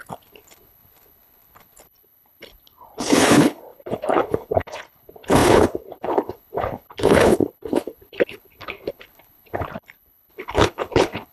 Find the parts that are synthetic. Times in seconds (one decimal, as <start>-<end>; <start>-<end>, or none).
0.0-11.3